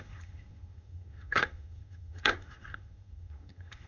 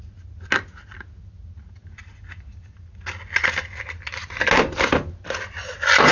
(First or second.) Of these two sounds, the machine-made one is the first